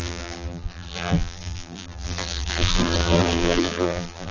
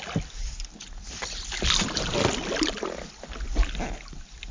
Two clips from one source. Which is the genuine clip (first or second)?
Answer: second